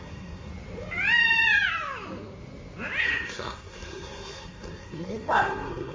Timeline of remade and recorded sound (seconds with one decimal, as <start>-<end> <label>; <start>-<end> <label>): 0.0-0.5 remade; 0.5-3.0 recorded; 3.0-5.9 remade